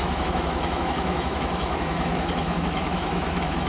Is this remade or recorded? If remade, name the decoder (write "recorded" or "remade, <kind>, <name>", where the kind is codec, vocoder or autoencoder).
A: remade, autoencoder, DAC-VAE